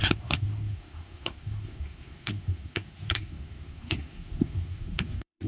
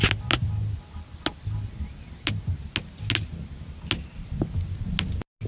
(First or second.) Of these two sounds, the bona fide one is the second